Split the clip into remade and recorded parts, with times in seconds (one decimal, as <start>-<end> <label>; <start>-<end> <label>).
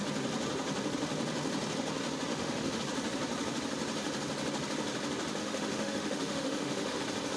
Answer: 0.0-2.3 recorded; 2.3-2.8 remade; 2.8-5.4 recorded; 5.4-7.0 remade; 7.0-7.4 recorded